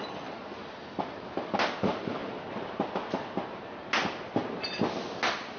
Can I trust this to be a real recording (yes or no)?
yes